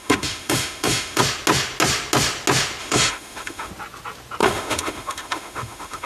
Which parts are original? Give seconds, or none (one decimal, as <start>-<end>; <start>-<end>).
1.2-2.8; 3.7-4.4